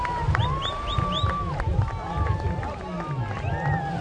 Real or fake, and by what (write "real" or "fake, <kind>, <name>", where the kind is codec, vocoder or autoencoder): real